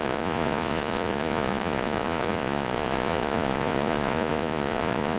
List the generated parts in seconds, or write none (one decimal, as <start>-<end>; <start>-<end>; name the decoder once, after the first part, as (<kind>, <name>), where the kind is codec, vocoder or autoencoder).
0.0-5.2 (vocoder, Vocos)